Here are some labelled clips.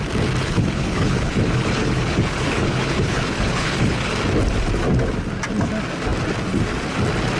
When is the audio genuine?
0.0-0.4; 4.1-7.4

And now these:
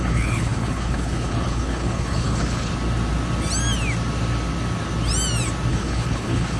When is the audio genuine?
2.7-5.7

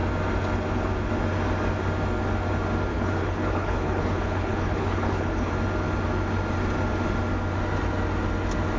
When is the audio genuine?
0.0-2.9; 5.5-8.8

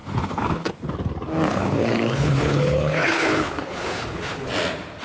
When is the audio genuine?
0.7-1.5; 4.5-5.0

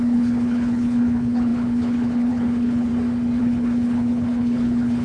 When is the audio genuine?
2.9-3.4

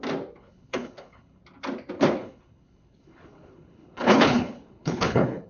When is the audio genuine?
0.0-0.4; 1.4-2.2

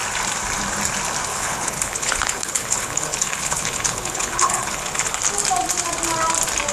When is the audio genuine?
0.0-1.3; 5.2-6.7